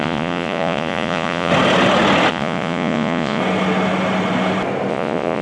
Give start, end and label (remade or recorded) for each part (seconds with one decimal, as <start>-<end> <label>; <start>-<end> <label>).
0.0-1.5 remade; 1.5-2.3 recorded; 2.3-3.4 remade; 3.4-4.9 recorded; 4.9-5.4 remade